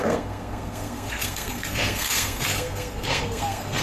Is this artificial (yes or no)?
yes